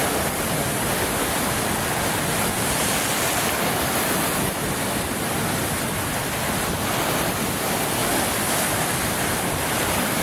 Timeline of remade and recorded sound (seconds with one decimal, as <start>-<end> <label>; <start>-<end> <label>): 0.0-10.2 recorded